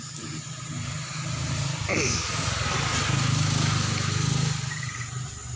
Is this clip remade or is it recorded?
recorded